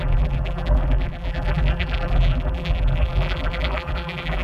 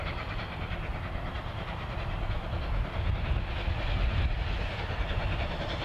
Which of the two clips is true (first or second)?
second